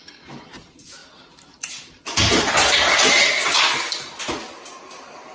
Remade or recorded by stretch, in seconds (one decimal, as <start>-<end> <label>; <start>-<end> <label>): 0.0-5.3 recorded